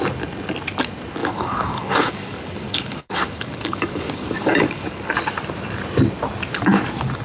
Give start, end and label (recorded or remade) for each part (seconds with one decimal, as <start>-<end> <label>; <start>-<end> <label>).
0.0-1.2 recorded; 1.2-5.0 remade; 5.0-7.2 recorded